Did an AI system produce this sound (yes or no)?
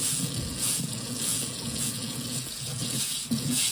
yes